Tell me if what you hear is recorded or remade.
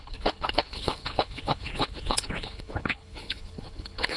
remade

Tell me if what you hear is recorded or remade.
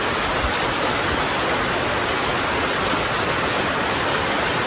recorded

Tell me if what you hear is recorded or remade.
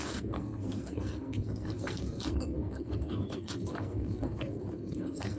remade